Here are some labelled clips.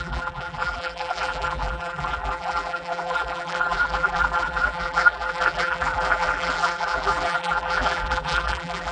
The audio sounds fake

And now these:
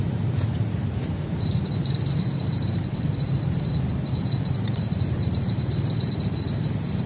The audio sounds fake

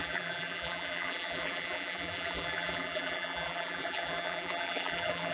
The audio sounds fake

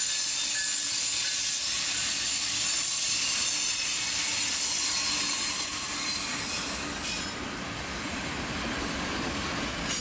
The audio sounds real